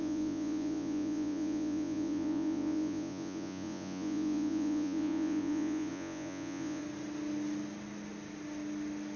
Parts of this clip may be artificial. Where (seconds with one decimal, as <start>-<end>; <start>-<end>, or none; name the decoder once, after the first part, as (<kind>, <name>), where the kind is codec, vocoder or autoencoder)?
0.0-6.8 (vocoder, Vocos)